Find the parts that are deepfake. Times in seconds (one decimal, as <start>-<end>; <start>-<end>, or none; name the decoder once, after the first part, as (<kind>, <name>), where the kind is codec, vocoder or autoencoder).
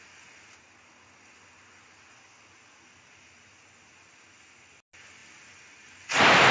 none